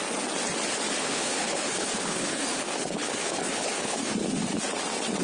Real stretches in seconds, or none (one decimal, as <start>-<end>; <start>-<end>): 0.0-1.0; 4.1-5.2